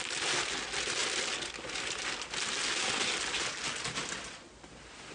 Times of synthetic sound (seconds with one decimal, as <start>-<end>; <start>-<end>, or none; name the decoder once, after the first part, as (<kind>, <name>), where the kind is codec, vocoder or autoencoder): none